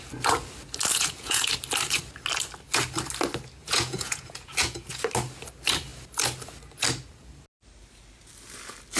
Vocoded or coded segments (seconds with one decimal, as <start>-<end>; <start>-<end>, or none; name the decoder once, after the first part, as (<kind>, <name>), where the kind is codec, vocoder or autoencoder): 0.9-1.5 (vocoder, Vocos); 3.6-5.0